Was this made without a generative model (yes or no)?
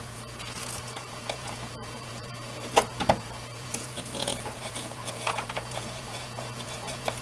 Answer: no